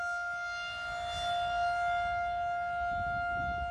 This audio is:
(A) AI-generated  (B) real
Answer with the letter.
B